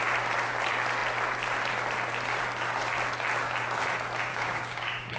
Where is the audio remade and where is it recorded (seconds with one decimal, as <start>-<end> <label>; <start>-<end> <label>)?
0.0-4.3 recorded; 4.3-5.2 remade